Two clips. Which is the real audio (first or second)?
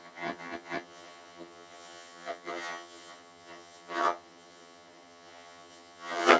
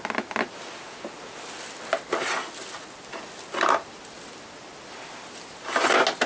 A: second